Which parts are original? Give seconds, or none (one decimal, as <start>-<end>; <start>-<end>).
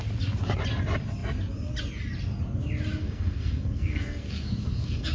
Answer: 0.0-3.0